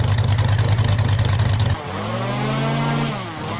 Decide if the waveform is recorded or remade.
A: recorded